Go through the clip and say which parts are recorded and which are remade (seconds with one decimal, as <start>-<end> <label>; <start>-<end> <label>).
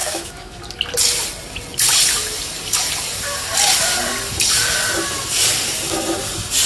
0.0-0.6 remade; 0.6-6.7 recorded